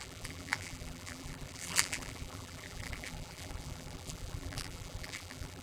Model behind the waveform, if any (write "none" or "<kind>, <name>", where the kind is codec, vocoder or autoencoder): vocoder, BigVGAN v2